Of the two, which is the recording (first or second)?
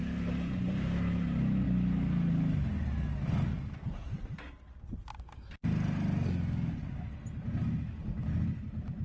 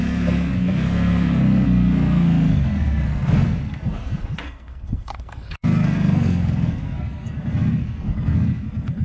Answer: first